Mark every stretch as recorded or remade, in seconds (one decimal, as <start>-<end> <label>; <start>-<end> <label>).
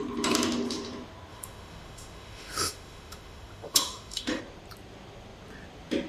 0.0-1.3 recorded; 1.3-4.4 remade; 4.4-6.1 recorded